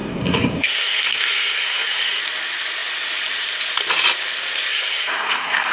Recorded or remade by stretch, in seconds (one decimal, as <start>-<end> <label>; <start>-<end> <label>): 0.0-2.2 remade; 2.2-4.7 recorded; 4.7-5.7 remade